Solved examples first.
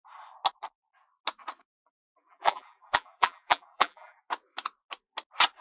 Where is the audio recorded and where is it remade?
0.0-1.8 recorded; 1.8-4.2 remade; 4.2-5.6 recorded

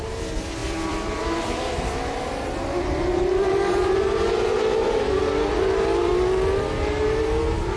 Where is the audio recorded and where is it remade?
0.0-0.6 recorded; 0.6-5.2 remade; 5.2-7.8 recorded